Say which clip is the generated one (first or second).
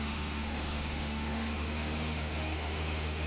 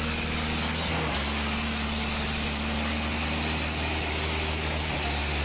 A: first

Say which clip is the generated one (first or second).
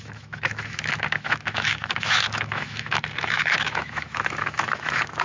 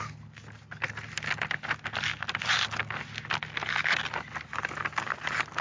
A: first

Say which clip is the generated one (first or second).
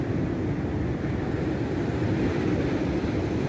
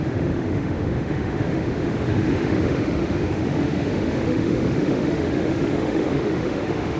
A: second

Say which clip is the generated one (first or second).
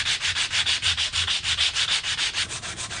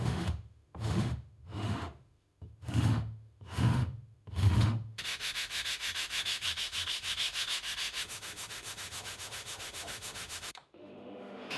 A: second